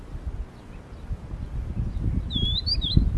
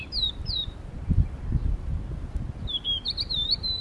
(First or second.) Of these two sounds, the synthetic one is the second